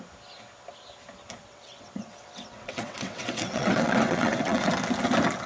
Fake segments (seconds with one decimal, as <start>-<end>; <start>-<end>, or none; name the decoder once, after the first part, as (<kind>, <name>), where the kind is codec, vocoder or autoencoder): 1.4-4.7 (vocoder, WaveNeXt)